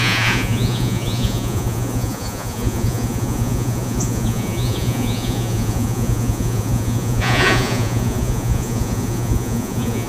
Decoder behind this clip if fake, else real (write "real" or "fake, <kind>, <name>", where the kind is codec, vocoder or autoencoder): fake, vocoder, Vocos